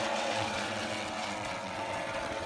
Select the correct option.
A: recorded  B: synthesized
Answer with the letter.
B